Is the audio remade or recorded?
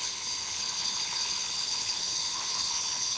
remade